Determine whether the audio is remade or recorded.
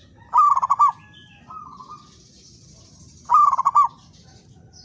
recorded